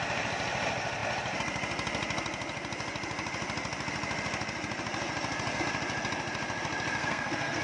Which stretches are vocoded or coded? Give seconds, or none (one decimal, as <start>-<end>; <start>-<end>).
7.0-7.6